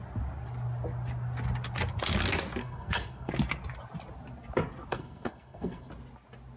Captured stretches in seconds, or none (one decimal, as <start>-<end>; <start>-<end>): 0.0-2.6; 3.3-4.9; 5.9-6.6